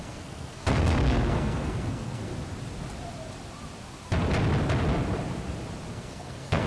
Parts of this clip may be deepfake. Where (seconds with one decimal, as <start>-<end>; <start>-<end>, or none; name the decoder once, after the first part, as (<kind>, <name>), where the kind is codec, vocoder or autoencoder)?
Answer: 0.0-2.3 (codec, SNAC); 5.9-6.7